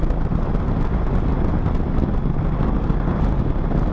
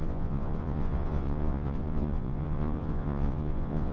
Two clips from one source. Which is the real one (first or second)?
first